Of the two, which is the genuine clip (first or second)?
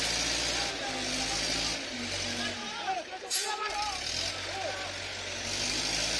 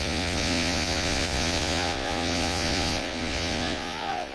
first